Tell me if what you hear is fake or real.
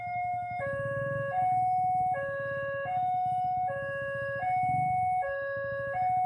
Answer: fake